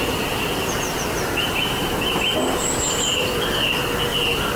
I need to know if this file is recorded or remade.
recorded